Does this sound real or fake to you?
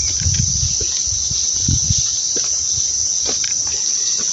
real